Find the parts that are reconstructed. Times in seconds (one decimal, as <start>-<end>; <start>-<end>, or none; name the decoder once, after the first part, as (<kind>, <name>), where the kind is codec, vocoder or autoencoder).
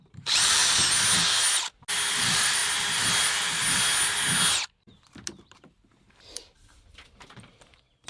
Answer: 0.0-0.6 (vocoder, BigVGAN v2); 2.1-2.6; 6.1-8.1